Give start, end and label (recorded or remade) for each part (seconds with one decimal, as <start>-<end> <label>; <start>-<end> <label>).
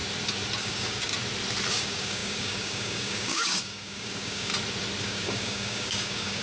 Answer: 0.0-0.6 recorded; 0.6-1.1 remade; 1.1-1.7 recorded; 1.7-4.5 remade; 4.5-5.0 recorded; 5.0-6.4 remade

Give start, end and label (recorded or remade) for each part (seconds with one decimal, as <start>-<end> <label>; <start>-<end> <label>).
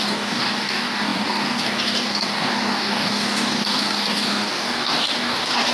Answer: 0.0-5.7 remade